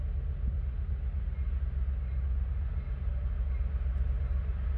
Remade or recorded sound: recorded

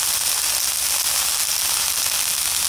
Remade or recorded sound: recorded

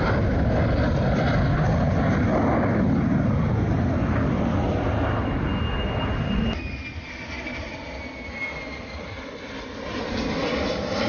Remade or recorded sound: recorded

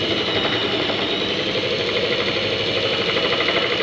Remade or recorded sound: remade